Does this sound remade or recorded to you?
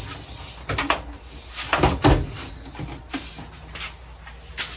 recorded